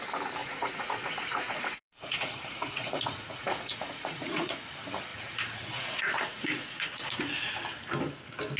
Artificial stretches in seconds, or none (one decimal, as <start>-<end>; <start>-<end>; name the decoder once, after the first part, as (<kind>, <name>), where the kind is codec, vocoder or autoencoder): 0.4-4.5 (vocoder, Vocos); 5.1-7.5